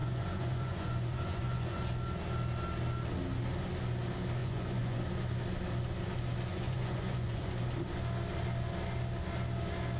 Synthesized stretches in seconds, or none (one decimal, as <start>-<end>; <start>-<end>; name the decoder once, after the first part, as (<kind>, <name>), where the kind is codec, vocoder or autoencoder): 0.0-1.8 (vocoder, Vocos); 4.4-5.0; 6.5-7.5